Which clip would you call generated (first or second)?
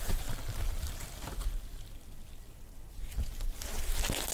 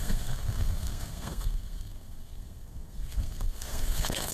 second